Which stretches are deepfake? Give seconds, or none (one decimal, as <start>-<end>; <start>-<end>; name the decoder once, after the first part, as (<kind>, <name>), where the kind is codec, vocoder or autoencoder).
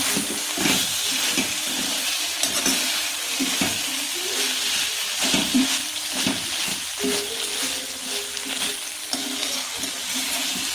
0.0-6.7 (vocoder, BigVGAN v2); 8.7-10.7